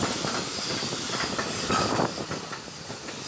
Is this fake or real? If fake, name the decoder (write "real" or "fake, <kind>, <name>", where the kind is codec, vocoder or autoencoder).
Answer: real